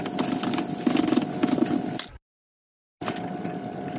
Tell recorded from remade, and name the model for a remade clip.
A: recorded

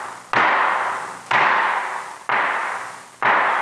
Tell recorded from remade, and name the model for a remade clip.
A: recorded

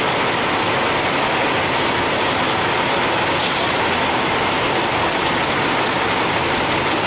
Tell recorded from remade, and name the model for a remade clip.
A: recorded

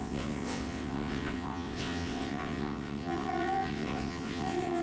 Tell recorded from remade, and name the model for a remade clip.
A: remade, vocoder, WaveNeXt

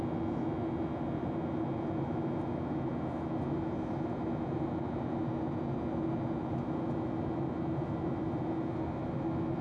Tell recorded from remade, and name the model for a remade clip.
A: recorded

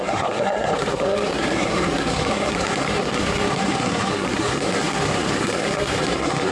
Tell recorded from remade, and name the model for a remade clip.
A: remade, codec, SNAC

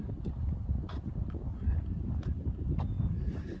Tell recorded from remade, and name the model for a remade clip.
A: recorded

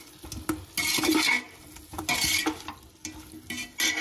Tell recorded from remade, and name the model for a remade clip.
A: recorded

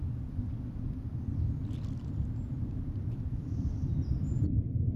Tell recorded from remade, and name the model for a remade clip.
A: recorded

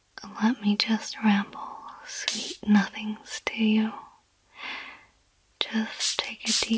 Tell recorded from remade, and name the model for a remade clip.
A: recorded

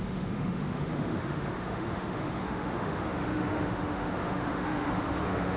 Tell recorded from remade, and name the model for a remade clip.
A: remade, autoencoder, DAC-VAE